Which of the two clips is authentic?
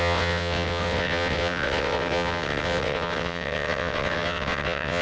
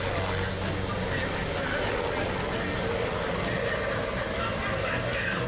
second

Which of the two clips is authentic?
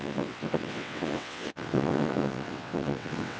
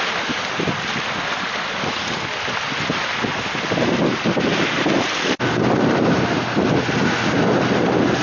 second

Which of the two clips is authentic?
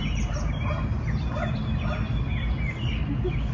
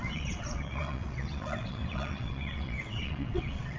first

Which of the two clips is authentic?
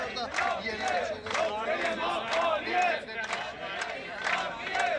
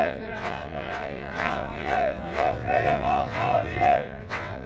first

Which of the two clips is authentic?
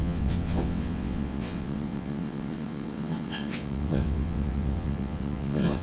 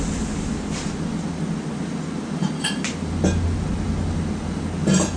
second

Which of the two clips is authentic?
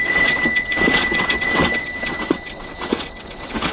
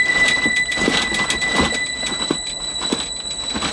second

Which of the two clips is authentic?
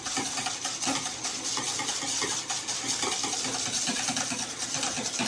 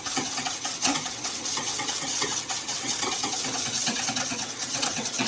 first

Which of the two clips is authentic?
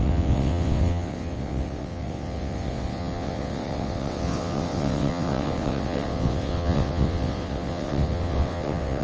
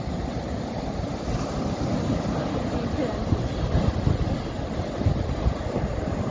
second